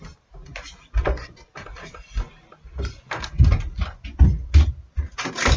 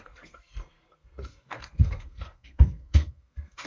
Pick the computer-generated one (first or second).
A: second